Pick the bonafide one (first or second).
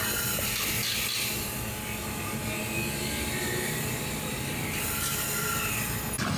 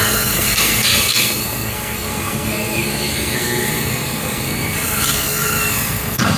first